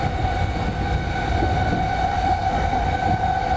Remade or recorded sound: recorded